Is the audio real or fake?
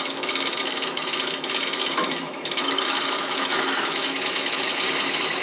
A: fake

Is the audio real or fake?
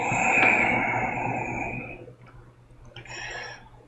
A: real